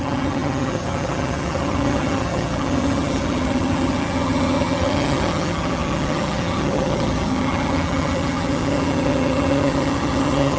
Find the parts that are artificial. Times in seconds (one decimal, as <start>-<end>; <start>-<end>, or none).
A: 0.0-10.6